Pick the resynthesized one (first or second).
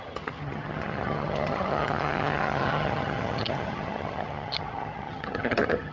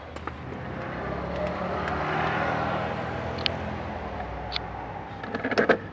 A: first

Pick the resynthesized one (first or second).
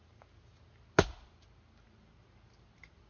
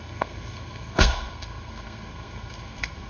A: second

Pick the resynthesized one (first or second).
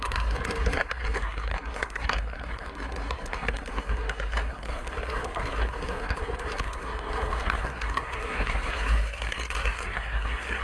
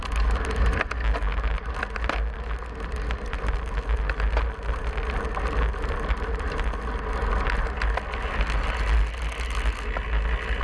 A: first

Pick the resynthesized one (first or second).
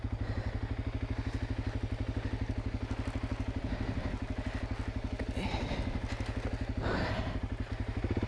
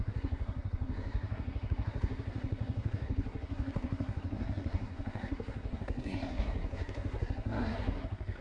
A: second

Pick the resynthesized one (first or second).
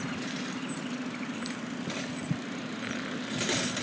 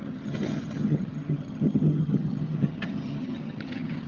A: second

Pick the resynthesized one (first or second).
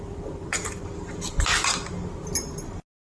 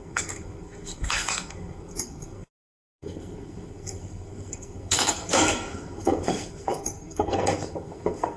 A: second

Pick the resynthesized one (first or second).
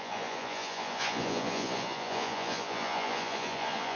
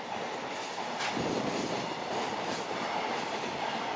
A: first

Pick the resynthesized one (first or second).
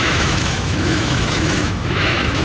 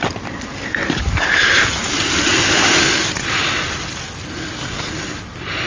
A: first